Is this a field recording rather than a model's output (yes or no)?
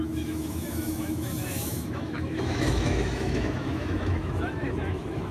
no